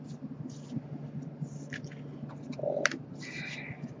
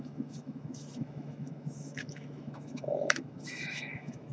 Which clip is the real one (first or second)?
first